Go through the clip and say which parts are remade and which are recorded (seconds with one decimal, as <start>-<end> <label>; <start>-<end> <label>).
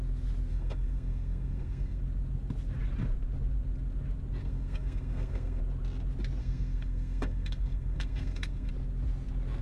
0.0-0.5 recorded; 0.5-2.0 remade; 2.0-4.4 recorded; 4.4-5.6 remade; 5.6-6.4 recorded; 6.4-8.7 remade; 8.7-9.6 recorded